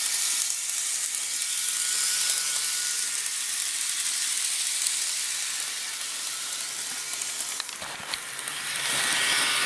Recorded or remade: remade